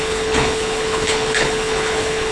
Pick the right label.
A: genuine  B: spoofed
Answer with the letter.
B